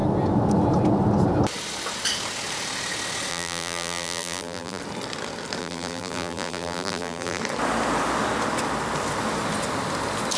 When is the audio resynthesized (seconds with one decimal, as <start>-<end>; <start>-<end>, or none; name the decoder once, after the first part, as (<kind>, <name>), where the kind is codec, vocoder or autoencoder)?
3.3-4.8 (vocoder, BigVGAN v2); 5.6-7.4